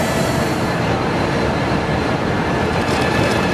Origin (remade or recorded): remade